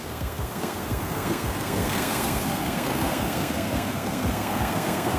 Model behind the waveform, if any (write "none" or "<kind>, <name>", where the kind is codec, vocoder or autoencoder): codec, SNAC